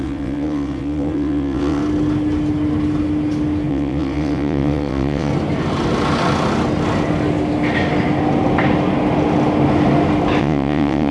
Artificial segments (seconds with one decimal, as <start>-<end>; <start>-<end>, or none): 0.0-1.8; 3.7-5.3; 10.4-11.1

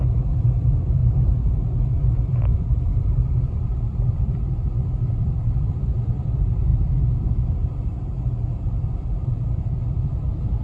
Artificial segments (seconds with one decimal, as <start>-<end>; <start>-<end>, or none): 0.0-1.0; 1.9-6.7; 8.7-10.6